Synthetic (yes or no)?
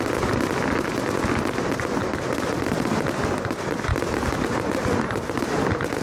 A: no